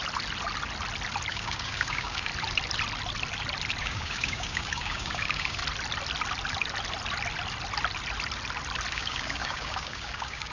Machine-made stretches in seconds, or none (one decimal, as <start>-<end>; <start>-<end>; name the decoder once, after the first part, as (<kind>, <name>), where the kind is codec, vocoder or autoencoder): 1.3-2.3 (codec, DAC); 3.8-5.6; 8.9-10.5